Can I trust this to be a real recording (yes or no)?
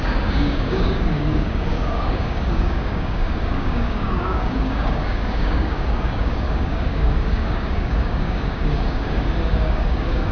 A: no